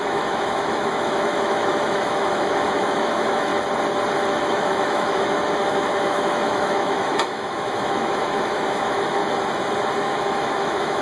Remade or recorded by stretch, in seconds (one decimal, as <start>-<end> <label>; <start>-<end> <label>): 0.0-3.5 remade; 3.5-4.4 recorded; 4.4-9.2 remade; 9.2-10.0 recorded; 10.0-11.0 remade